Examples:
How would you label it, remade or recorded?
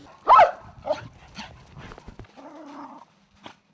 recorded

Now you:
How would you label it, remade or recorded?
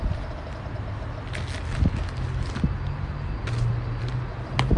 recorded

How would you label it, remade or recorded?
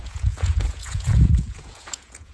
remade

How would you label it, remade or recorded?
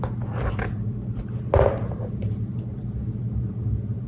recorded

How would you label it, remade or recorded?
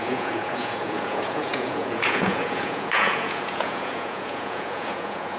remade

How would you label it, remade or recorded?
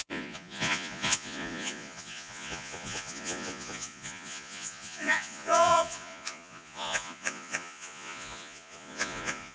remade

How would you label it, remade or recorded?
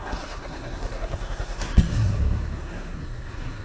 remade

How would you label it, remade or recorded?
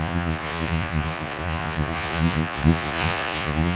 remade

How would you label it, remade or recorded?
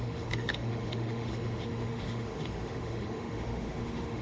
remade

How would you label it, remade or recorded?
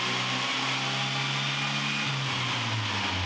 recorded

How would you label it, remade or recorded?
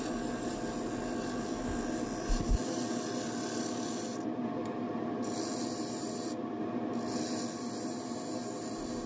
recorded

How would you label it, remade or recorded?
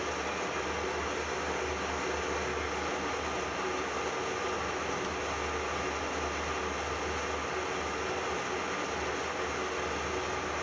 recorded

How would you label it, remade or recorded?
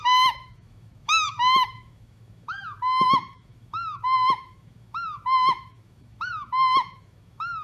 remade